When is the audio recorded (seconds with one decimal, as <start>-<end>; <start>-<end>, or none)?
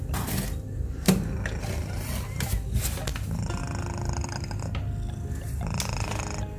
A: 0.0-6.6